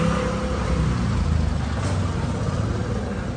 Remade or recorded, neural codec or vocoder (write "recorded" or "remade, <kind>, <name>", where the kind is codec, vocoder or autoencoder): recorded